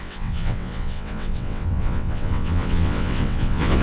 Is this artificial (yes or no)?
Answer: yes